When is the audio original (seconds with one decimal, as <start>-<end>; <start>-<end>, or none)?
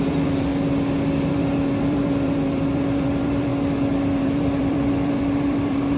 0.5-1.3; 3.5-4.2